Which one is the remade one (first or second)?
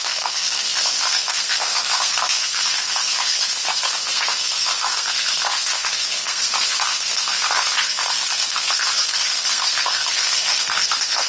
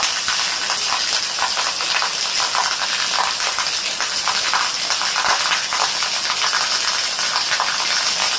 first